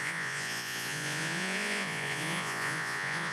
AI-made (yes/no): yes